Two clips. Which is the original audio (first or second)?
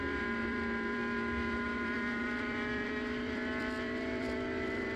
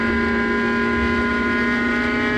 second